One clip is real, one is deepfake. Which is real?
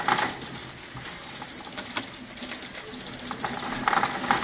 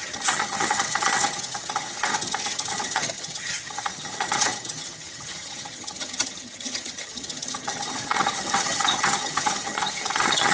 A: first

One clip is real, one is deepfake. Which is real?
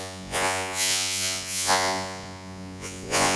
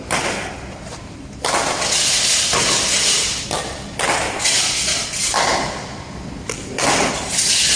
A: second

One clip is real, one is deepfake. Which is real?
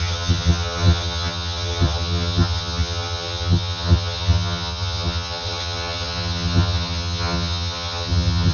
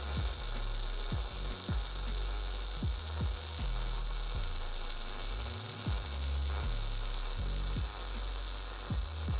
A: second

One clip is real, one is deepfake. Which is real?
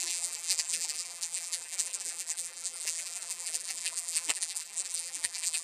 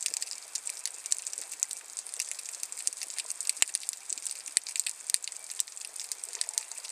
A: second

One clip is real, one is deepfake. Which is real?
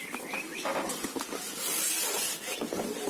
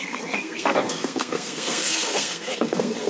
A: first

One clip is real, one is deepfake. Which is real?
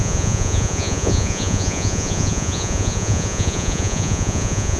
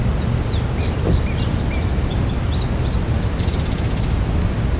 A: second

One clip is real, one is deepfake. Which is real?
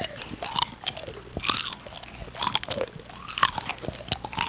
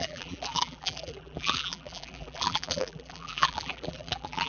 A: first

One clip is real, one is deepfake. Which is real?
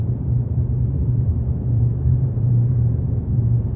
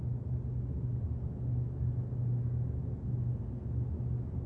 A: second